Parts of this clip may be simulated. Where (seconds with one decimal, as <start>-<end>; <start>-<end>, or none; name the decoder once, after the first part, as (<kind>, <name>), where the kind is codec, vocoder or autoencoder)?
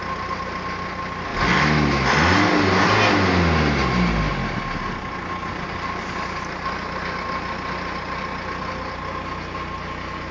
none